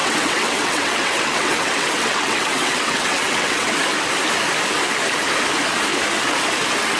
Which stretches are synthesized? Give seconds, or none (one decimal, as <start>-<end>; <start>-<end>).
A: 0.0-3.8